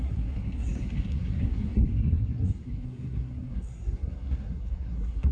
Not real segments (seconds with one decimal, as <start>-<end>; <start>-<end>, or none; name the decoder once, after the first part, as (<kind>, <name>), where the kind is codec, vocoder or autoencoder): 0.0-5.3 (codec, SNAC)